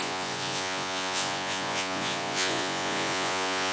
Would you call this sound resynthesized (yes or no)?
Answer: yes